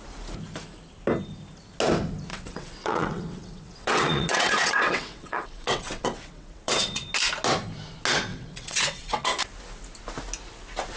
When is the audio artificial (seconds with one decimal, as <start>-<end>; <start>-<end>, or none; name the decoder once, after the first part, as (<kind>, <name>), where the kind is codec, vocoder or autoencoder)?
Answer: 2.3-7.1 (vocoder, WaveNeXt); 8.3-9.4